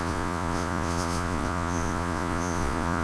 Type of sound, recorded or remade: remade